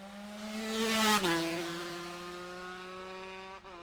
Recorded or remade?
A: recorded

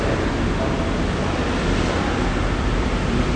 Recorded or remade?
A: recorded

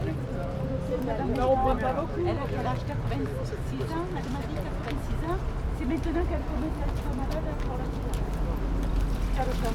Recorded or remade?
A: recorded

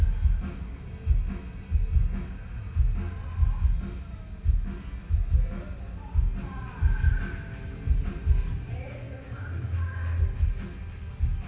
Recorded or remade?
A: recorded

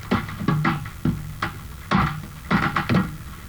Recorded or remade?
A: recorded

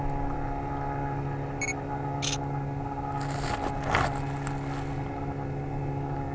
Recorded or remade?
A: recorded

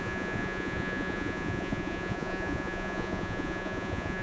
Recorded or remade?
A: remade